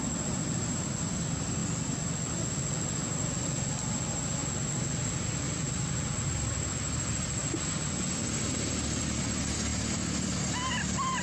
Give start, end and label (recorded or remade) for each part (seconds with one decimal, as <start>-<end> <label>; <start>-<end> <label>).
0.0-7.4 recorded; 7.4-7.9 remade; 7.9-11.2 recorded